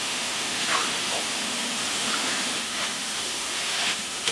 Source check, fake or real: fake